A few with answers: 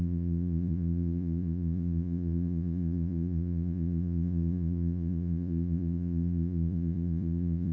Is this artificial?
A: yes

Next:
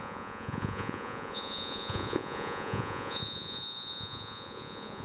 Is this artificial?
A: yes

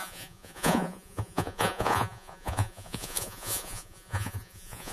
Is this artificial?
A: yes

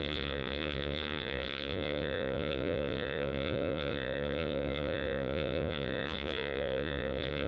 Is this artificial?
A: yes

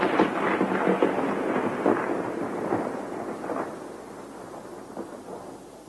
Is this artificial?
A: no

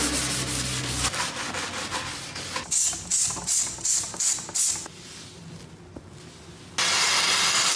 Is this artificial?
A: no